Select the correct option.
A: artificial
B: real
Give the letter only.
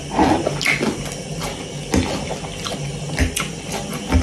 B